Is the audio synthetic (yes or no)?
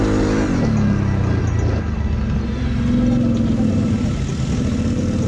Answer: no